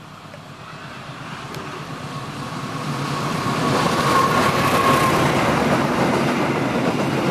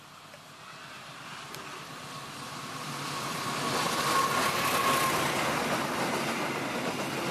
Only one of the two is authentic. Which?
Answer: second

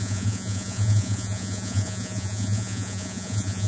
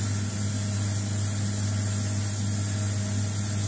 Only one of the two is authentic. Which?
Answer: second